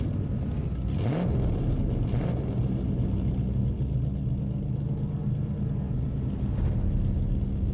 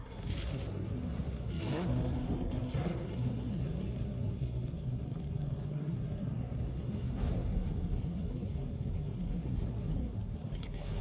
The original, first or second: first